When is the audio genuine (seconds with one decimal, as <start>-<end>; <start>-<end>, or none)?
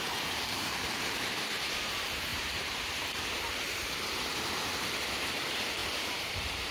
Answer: none